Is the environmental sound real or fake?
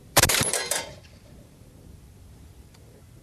fake